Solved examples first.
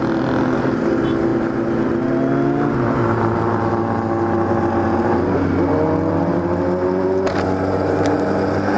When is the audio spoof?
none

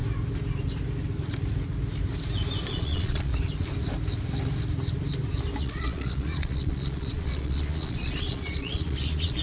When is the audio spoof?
2.7-3.3 (vocoder, Vocos); 5.6-9.4

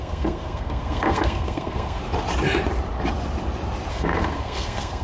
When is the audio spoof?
0.0-2.0 (codec, SNAC); 3.9-5.0

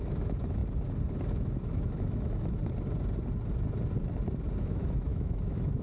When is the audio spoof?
0.0-0.6 (autoencoder, DAC-VAE); 1.3-2.6; 4.6-5.8

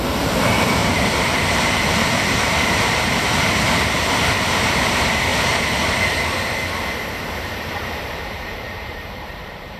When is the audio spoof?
0.0-5.3 (vocoder, BigVGAN v2); 7.3-9.8

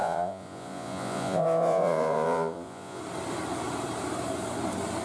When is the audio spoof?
0.0-3.0 (vocoder, Vocos)

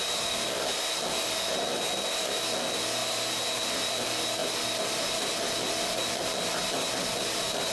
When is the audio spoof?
none